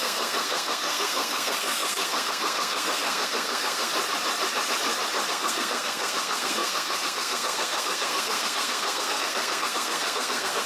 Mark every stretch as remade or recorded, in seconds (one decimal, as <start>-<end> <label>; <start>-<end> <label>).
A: 0.0-3.9 remade; 3.9-5.3 recorded; 5.3-10.7 remade